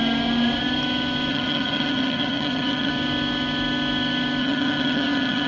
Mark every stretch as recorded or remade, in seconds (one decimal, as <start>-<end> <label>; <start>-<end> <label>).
0.0-1.3 recorded; 1.3-2.9 remade; 2.9-4.4 recorded; 4.4-5.5 remade